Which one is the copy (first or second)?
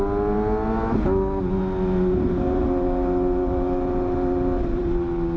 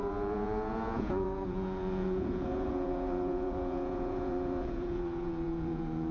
second